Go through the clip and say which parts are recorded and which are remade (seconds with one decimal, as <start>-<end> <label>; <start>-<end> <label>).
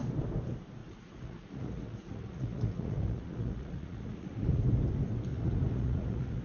0.0-0.8 recorded; 0.8-4.6 remade; 4.6-5.3 recorded; 5.3-6.4 remade